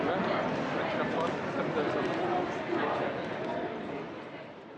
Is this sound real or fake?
fake